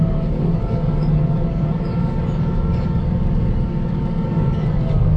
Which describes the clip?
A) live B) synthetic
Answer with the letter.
B